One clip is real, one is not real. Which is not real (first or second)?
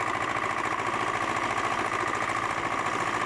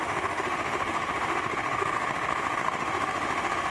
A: second